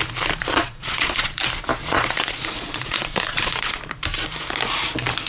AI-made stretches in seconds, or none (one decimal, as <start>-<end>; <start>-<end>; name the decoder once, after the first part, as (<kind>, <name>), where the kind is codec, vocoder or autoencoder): 0.4-1.4 (vocoder, Vocos); 1.8-3.8